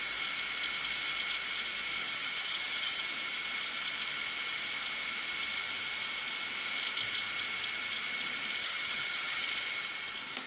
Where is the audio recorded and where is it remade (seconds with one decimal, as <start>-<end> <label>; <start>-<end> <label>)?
0.0-2.0 recorded; 2.0-3.0 remade; 3.0-8.6 recorded; 8.6-9.5 remade; 9.5-10.5 recorded